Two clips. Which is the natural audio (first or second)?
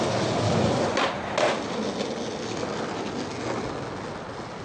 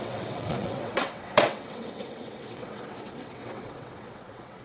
first